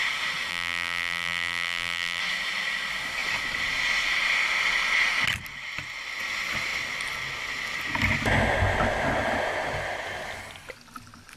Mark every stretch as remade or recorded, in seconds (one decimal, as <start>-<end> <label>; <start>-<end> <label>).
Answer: 0.0-0.5 recorded; 0.5-2.2 remade; 2.2-11.4 recorded